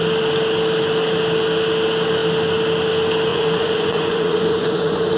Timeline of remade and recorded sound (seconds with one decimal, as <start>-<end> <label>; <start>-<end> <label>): 0.0-3.3 recorded; 3.3-5.2 remade